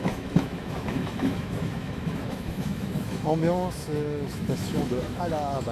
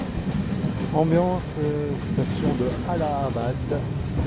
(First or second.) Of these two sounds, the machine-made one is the first